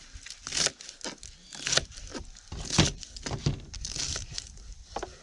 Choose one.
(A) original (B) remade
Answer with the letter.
A